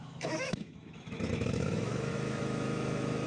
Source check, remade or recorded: remade